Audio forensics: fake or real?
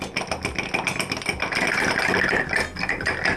real